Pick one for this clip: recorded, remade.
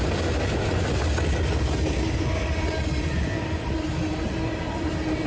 recorded